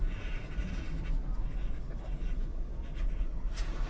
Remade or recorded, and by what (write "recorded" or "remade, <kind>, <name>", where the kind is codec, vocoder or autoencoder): recorded